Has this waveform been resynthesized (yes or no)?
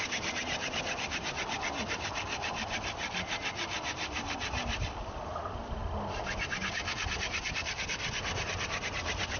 no